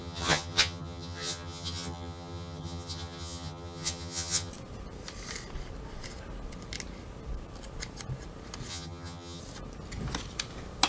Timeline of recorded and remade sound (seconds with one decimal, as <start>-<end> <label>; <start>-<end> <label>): 0.0-4.5 remade; 4.5-8.7 recorded; 8.7-9.4 remade; 9.4-10.9 recorded

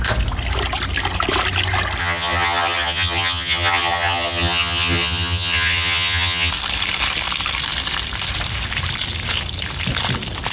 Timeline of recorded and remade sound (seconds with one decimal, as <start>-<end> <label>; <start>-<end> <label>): 0.0-2.0 recorded; 2.0-6.5 remade; 6.5-10.5 recorded

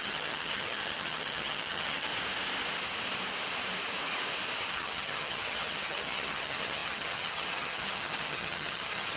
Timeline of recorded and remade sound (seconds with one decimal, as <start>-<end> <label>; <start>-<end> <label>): 0.0-2.1 remade; 2.1-4.7 recorded; 4.7-9.2 remade